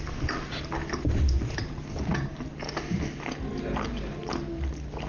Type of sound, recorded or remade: recorded